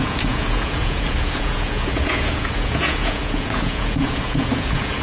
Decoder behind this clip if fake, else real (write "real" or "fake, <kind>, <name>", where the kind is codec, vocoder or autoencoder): fake, vocoder, Vocos